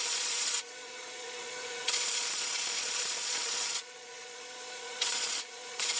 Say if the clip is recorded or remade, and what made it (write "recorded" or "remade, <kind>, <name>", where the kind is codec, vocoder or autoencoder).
remade, vocoder, Vocos